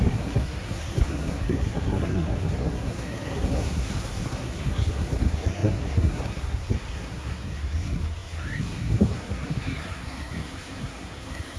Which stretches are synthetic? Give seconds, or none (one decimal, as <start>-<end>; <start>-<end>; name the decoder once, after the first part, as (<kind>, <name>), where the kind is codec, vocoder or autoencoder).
0.0-11.6 (codec, SNAC)